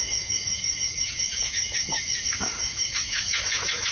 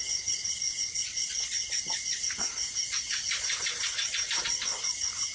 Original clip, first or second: second